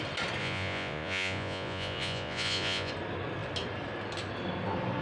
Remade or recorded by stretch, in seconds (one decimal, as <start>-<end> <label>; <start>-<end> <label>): 0.0-0.4 recorded; 0.4-2.9 remade; 2.9-5.0 recorded